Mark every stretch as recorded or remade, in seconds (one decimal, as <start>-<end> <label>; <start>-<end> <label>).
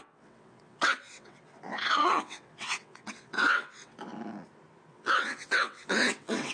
0.0-4.1 remade; 4.1-4.9 recorded; 4.9-6.5 remade